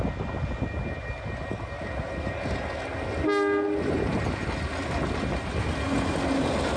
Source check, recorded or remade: recorded